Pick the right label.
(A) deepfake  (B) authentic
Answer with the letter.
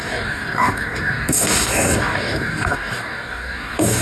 A